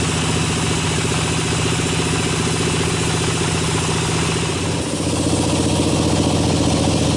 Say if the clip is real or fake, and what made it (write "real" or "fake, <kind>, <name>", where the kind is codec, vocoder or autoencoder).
real